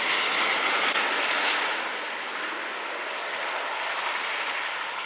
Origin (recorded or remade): recorded